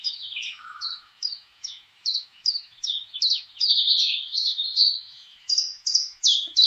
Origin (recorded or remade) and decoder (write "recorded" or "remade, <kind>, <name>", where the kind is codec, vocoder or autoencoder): remade, autoencoder, DAC-VAE